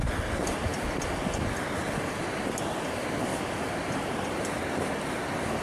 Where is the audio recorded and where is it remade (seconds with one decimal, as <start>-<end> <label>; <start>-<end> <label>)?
0.0-5.6 recorded